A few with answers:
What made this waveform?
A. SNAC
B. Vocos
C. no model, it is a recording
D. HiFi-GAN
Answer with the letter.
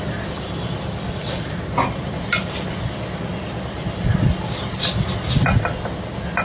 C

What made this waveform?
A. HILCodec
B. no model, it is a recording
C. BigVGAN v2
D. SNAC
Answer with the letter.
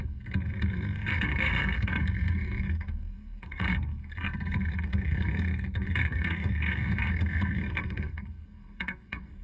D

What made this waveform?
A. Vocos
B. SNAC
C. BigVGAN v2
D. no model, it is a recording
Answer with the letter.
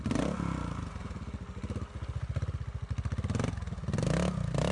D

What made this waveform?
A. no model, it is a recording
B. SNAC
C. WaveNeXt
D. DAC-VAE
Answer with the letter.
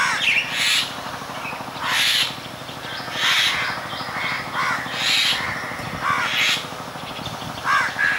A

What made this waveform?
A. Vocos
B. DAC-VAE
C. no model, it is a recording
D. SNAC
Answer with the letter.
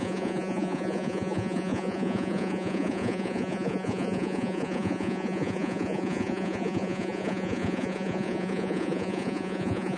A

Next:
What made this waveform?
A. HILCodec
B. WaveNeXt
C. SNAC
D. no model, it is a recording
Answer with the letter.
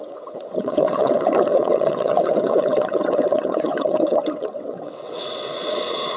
B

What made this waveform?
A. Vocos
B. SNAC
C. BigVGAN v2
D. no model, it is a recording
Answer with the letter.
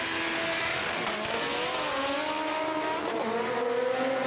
D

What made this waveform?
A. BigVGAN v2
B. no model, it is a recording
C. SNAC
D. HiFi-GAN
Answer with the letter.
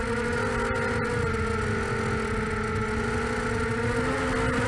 B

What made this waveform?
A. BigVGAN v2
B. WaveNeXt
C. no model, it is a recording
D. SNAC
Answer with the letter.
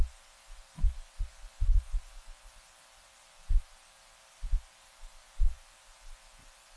C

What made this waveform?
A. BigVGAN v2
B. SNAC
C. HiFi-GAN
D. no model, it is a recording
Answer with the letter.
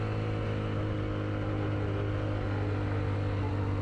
D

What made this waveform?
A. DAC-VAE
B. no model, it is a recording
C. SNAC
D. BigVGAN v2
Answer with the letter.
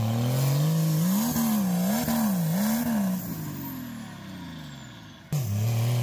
B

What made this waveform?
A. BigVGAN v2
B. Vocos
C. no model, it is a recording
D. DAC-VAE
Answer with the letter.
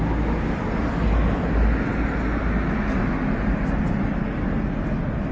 C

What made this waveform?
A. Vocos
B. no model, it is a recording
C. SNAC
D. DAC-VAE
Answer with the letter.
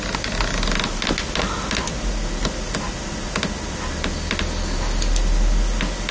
B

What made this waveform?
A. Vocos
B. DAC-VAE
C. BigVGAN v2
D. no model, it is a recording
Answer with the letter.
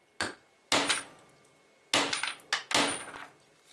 D